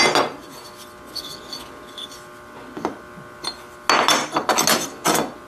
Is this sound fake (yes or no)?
no